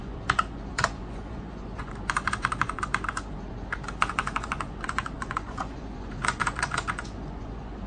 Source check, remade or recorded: remade